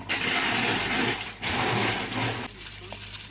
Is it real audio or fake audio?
real